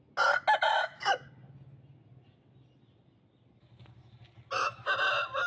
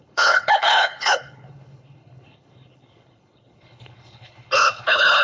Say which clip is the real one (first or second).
first